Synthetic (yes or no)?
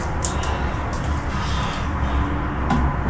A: no